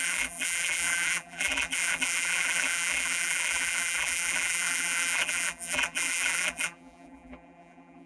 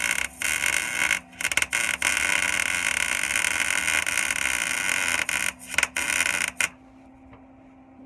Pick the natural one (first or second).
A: second